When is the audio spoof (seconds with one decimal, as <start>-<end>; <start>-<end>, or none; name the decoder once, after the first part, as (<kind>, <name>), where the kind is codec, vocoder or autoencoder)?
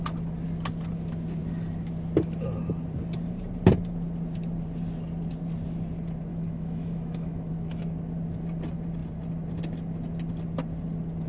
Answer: 6.3-7.5 (autoencoder, DAC-VAE)